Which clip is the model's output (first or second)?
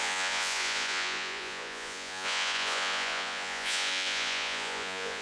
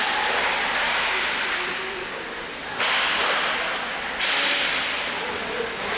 first